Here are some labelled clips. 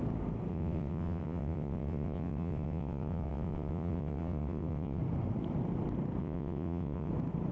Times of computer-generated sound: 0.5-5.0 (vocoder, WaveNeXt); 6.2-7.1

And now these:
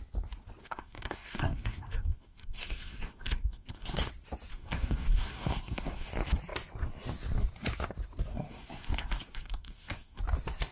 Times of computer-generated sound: 0.6-4.1 (codec, SNAC); 4.5-6.1; 8.3-10.2

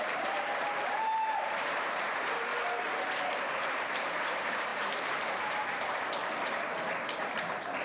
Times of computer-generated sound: 0.0-2.5 (vocoder, BigVGAN v2); 3.5-7.8

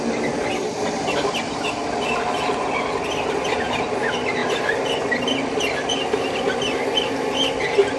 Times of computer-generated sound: 0.6-1.7 (vocoder, BigVGAN v2); 4.4-6.5

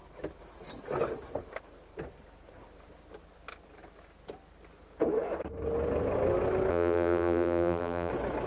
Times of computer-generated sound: 6.7-8.1 (vocoder, BigVGAN v2)

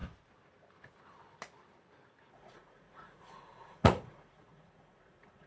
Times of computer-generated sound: 2.3-5.5 (vocoder, Vocos)